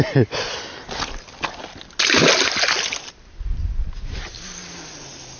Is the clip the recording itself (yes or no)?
yes